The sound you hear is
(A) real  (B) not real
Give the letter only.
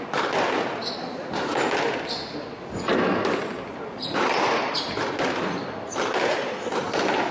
A